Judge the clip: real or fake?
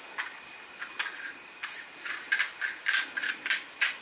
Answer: real